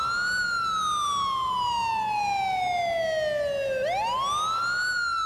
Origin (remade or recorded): recorded